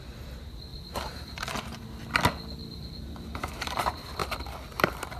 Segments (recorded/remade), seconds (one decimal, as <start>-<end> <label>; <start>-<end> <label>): 0.0-0.7 recorded; 0.7-1.8 remade; 1.8-2.6 recorded; 2.6-3.8 remade; 3.8-5.2 recorded